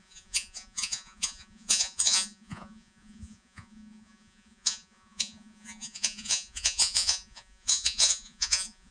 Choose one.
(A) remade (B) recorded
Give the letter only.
A